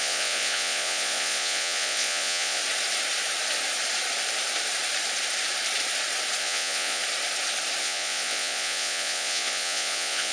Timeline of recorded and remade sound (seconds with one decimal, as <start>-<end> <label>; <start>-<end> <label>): 0.0-2.6 remade; 2.6-6.4 recorded; 6.4-7.0 remade; 7.0-7.8 recorded; 7.8-10.3 remade